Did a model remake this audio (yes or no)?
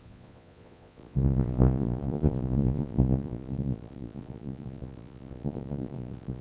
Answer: yes